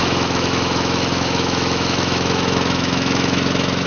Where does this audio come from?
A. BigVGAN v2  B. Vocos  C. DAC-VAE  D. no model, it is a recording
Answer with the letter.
C